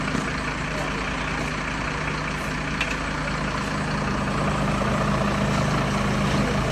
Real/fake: real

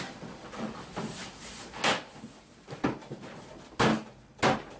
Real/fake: real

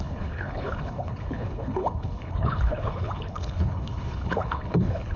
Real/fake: fake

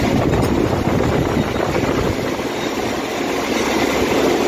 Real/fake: real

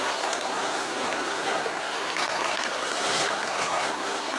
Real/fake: fake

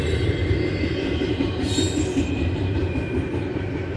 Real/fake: fake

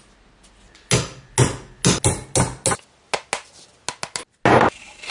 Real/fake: real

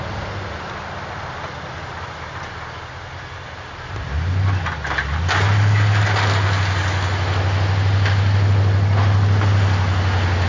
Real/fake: real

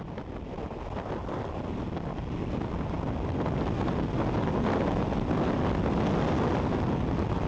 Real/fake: real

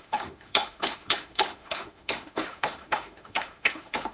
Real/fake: fake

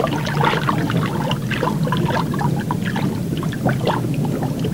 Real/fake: real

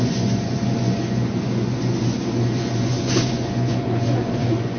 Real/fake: fake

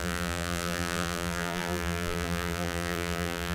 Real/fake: fake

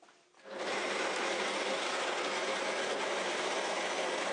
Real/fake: real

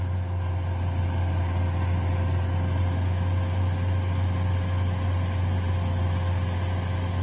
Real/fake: real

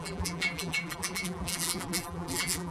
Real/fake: fake